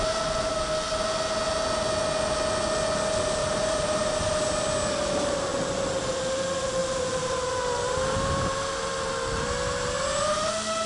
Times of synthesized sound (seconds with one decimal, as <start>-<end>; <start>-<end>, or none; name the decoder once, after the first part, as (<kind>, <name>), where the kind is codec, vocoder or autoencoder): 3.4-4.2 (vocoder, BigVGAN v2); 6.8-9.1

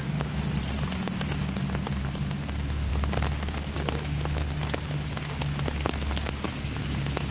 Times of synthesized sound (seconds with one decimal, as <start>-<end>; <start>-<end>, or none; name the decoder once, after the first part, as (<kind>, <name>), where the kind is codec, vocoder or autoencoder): none

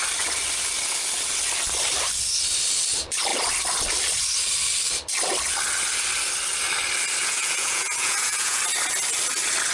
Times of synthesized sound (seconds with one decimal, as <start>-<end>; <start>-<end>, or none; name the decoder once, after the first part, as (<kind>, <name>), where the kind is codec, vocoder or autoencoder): 7.2-8.6 (vocoder, Vocos)

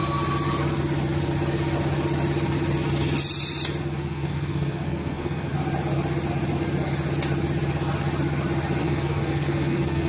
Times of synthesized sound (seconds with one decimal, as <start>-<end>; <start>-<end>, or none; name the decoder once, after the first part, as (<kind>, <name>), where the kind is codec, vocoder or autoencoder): 3.8-5.5 (codec, SNAC); 8.8-10.1

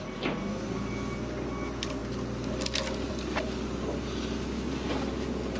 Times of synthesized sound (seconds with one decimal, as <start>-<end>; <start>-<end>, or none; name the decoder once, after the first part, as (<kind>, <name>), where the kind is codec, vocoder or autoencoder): none

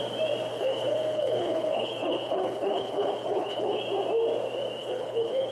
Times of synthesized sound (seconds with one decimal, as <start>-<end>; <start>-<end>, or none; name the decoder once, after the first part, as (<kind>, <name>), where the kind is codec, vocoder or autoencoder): 0.5-3.8 (codec, HILCodec); 4.8-5.5

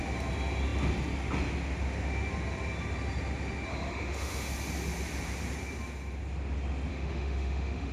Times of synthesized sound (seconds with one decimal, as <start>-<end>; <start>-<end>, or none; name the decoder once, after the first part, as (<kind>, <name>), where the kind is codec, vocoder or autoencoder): 3.7-4.5 (autoencoder, DAC-VAE); 6.9-7.9

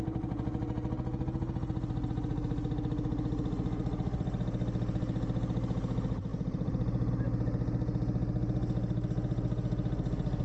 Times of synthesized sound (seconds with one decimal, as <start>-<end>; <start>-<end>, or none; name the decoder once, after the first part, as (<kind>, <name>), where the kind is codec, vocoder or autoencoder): 6.3-7.1 (vocoder, BigVGAN v2)